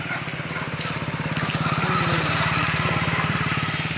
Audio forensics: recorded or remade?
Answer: recorded